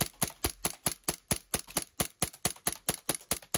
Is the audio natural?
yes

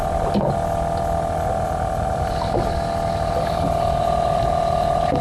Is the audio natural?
yes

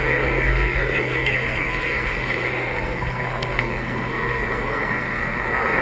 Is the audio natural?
no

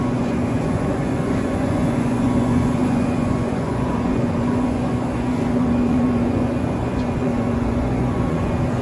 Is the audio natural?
no